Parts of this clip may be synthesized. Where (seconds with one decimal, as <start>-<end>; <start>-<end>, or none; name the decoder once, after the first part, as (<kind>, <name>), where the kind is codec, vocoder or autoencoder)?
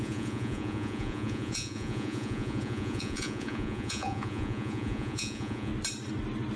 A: 0.0-5.7 (vocoder, Vocos)